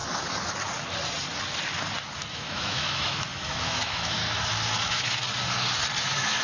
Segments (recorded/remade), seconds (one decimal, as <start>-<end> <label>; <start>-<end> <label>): 0.0-2.3 recorded; 2.3-4.2 remade; 4.2-4.8 recorded; 4.8-5.2 remade; 5.2-6.0 recorded; 6.0-6.4 remade